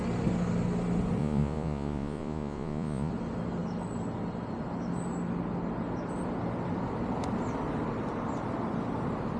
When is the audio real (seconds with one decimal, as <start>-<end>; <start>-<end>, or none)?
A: 0.0-1.2; 3.1-9.4